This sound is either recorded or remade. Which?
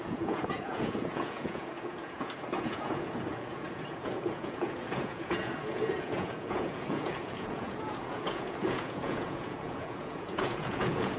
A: remade